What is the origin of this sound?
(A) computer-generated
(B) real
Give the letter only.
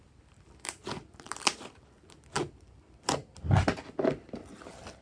B